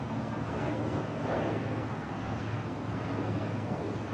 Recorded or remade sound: remade